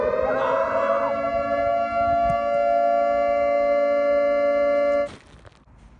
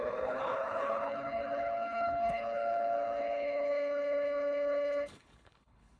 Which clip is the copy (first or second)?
second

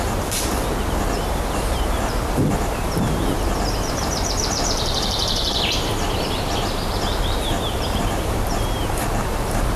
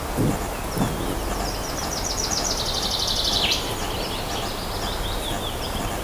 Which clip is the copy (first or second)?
first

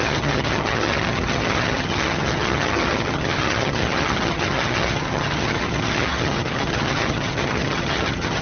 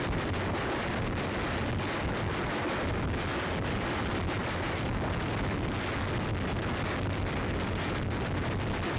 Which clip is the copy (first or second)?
first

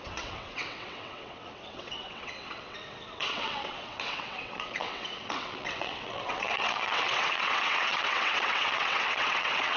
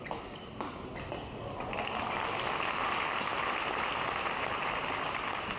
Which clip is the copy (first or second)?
first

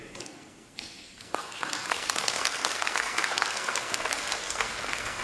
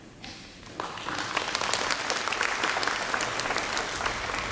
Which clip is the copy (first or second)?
first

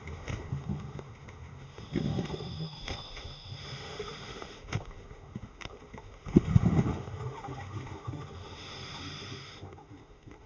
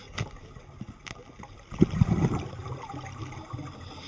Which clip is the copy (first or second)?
first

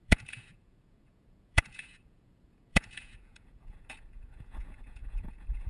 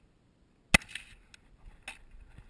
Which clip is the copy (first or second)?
first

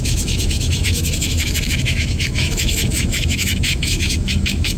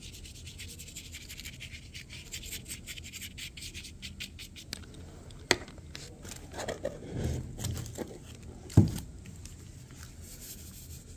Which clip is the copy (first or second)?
first